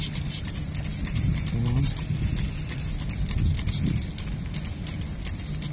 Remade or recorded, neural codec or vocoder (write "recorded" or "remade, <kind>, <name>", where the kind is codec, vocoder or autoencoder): recorded